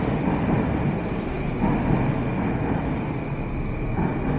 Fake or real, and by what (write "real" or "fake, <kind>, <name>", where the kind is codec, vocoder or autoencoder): real